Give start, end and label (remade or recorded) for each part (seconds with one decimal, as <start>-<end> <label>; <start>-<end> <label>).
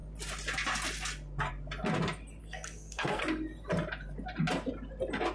0.0-2.4 recorded; 2.4-3.2 remade; 3.2-5.3 recorded